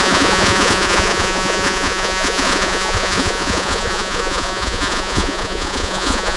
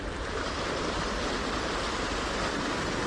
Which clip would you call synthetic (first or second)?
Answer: first